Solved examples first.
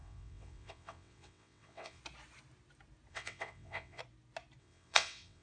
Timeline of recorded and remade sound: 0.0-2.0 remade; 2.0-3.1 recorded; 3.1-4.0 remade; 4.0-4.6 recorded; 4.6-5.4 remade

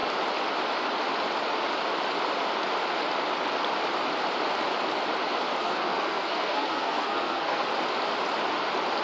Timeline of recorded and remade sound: 0.0-5.6 recorded; 5.6-7.6 remade; 7.6-9.0 recorded

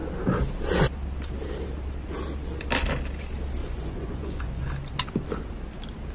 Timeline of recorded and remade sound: 0.0-3.6 recorded; 3.6-4.7 remade; 4.7-6.1 recorded

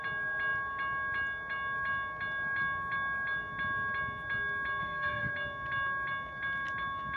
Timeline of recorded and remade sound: 0.0-4.8 recorded; 4.8-5.3 remade; 5.3-7.2 recorded

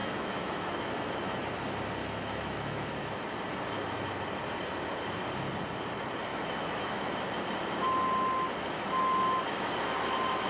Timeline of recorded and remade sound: 0.0-1.5 remade; 1.5-2.0 recorded; 2.0-2.9 remade; 2.9-6.3 recorded; 6.3-7.0 remade; 7.0-10.5 recorded

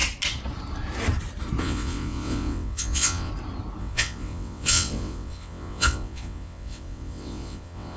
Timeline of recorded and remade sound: 0.0-1.6 recorded; 1.6-3.3 remade; 3.3-3.8 recorded; 3.8-8.0 remade

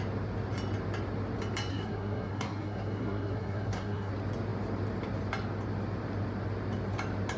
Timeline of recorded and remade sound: 0.0-1.7 recorded; 1.7-4.1 remade; 4.1-7.4 recorded